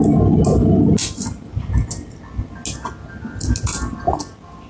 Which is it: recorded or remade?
recorded